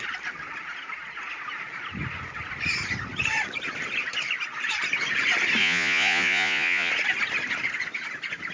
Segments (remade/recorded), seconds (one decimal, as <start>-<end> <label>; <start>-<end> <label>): 0.0-5.6 recorded; 5.6-6.9 remade; 6.9-8.5 recorded